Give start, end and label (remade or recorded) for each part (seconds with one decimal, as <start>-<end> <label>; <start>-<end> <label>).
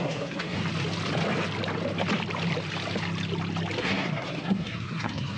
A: 0.0-0.6 remade; 0.6-3.8 recorded; 3.8-5.4 remade